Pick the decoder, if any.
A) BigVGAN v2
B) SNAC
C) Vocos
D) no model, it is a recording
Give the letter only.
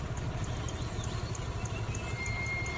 D